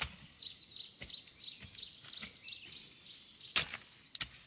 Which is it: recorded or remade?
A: recorded